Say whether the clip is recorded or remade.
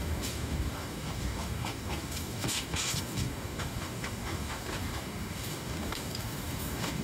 remade